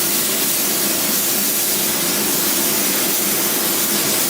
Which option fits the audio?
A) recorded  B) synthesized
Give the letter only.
A